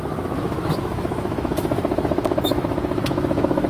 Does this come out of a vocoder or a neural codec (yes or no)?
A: yes